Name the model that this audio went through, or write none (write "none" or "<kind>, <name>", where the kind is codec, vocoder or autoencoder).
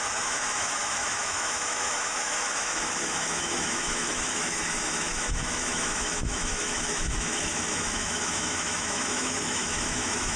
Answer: autoencoder, DAC-VAE